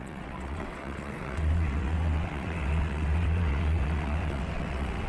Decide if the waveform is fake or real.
fake